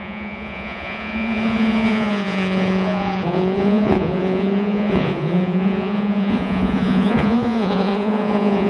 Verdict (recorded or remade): remade